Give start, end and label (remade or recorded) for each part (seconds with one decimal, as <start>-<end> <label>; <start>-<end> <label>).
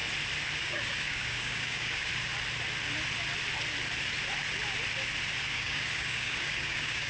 0.0-0.6 recorded; 0.6-2.1 remade; 2.1-5.4 recorded; 5.4-7.1 remade